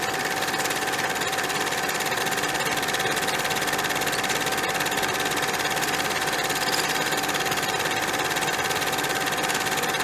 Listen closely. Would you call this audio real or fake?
real